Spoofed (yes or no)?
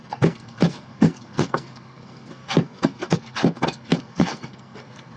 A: yes